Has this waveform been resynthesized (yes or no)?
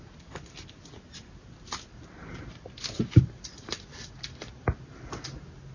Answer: no